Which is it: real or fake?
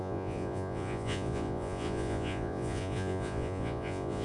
fake